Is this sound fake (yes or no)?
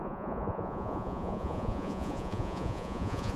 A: yes